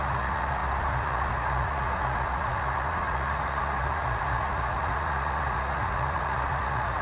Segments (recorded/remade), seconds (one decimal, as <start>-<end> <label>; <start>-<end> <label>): 0.0-7.0 remade